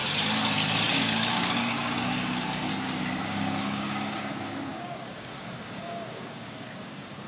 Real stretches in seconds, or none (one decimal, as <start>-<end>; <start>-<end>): 0.0-0.9; 2.7-3.2